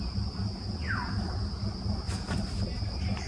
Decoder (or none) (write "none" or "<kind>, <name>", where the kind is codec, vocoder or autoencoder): none